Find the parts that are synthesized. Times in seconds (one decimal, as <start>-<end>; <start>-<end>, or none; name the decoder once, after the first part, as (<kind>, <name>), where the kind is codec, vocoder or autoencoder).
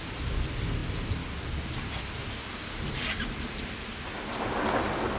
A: none